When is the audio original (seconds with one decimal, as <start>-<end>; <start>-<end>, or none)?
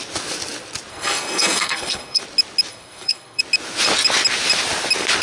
0.0-0.9; 2.2-2.7; 3.4-5.2